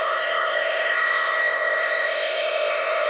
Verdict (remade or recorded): remade